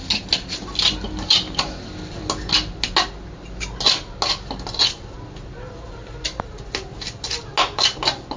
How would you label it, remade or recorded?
recorded